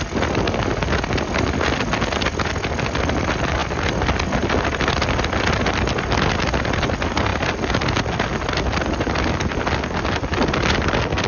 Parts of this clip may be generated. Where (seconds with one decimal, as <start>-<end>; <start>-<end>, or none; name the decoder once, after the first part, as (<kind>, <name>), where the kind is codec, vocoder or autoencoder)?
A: none